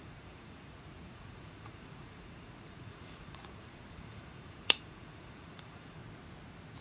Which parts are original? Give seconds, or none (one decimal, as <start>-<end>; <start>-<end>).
6.0-6.8